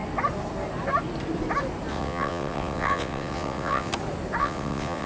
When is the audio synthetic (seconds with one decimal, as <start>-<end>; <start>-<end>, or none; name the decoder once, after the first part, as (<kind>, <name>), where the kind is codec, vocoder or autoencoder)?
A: 1.9-3.9 (vocoder, WaveNeXt); 4.4-5.1